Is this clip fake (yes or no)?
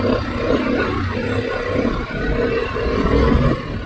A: no